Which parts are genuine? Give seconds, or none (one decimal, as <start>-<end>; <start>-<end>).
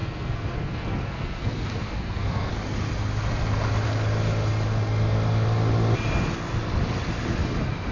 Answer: 2.5-7.9